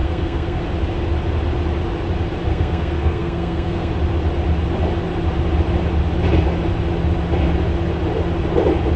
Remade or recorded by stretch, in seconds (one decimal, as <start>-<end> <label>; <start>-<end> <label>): 0.0-0.6 remade; 0.6-2.5 recorded; 2.5-3.9 remade; 3.9-9.0 recorded